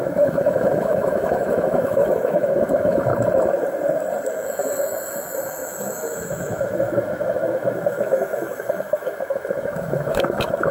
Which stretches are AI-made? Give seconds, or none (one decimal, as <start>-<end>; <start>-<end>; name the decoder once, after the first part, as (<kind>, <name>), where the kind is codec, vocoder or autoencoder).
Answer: 0.0-3.1 (autoencoder, DAC-VAE); 4.3-10.7